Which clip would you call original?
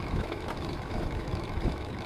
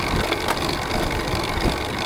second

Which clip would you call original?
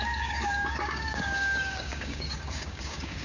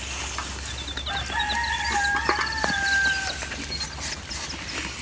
second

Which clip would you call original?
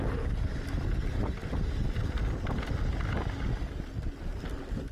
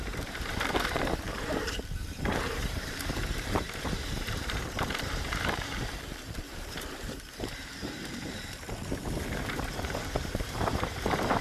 first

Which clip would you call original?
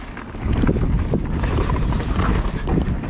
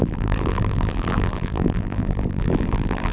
first